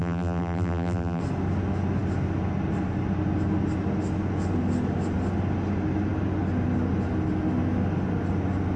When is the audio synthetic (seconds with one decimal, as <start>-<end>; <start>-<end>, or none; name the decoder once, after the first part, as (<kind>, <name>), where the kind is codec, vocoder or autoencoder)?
0.0-1.2 (vocoder, BigVGAN v2)